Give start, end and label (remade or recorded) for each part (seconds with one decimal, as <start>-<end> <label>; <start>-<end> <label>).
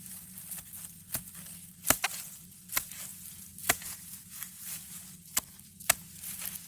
0.0-6.7 recorded